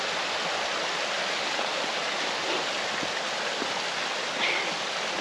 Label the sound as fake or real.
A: real